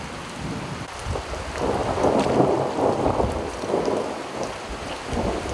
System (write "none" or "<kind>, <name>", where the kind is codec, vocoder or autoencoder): none